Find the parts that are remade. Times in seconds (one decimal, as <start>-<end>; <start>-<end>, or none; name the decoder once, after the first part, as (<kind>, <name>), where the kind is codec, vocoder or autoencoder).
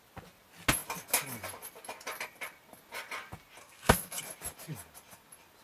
3.6-4.2 (codec, SNAC)